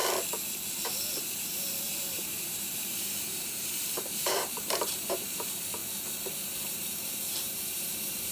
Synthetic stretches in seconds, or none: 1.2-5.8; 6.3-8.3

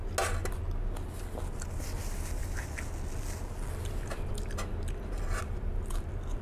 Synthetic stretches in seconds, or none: none

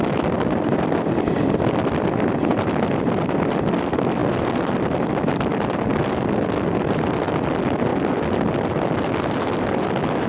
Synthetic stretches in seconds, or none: none

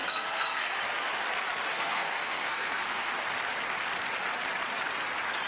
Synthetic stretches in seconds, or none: 0.0-0.8; 1.7-3.1